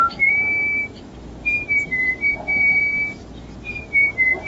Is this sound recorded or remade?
recorded